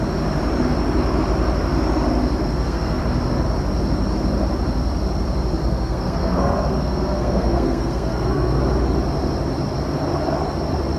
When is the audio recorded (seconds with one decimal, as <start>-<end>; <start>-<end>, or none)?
0.0-2.4; 3.0-5.6; 8.6-11.0